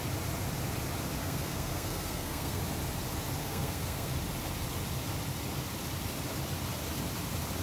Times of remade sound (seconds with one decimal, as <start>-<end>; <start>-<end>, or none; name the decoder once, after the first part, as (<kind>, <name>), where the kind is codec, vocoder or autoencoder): 1.2-2.6 (codec, SNAC); 3.4-4.1